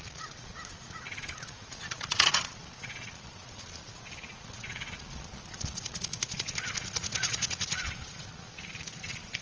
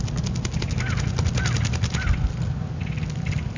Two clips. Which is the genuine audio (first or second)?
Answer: second